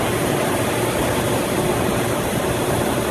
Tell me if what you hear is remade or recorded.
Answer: recorded